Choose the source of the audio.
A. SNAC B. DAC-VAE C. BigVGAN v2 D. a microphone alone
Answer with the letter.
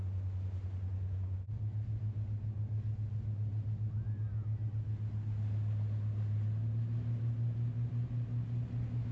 D